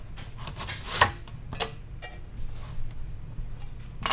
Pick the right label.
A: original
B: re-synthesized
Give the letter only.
A